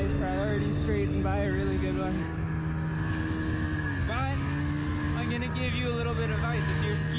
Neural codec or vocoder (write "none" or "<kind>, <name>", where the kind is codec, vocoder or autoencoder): none